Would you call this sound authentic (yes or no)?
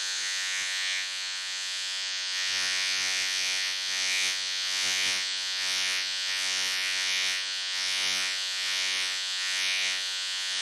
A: no